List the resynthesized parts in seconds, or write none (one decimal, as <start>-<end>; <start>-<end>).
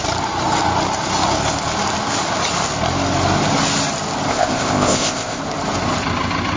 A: 4.3-5.4